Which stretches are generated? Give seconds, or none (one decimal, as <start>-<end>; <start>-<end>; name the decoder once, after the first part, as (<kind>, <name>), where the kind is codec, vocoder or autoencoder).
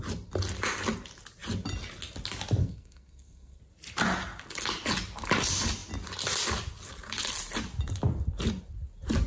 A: 2.6-3.6 (codec, SNAC)